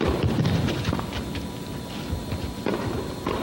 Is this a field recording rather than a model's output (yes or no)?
yes